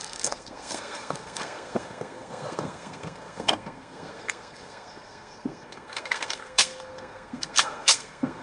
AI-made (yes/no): yes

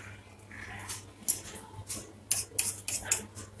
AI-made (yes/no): no